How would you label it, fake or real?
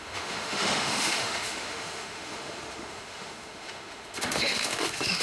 fake